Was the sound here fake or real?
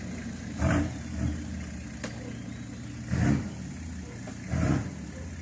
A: real